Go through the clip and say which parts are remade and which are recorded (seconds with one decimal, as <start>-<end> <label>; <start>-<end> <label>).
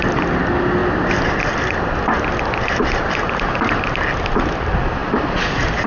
0.0-5.9 recorded